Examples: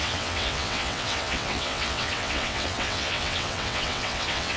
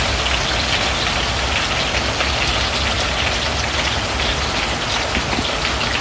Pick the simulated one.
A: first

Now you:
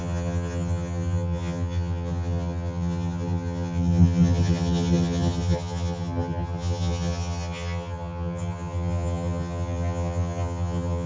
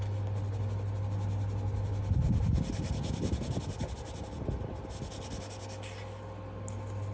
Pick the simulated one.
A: first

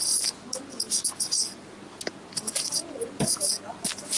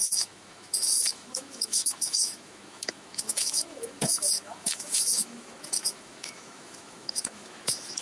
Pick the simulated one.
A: second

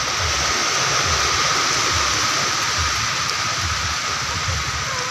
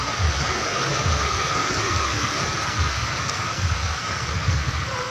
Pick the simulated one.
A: second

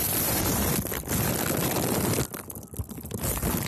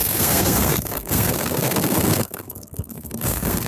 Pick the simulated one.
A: second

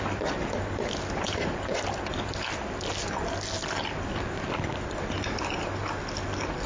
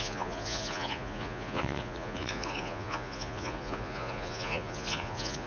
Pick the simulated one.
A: second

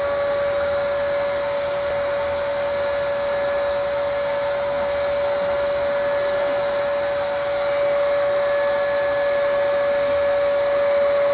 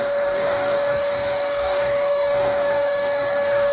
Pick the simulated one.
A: second